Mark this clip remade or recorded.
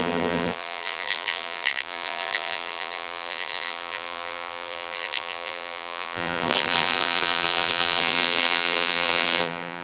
remade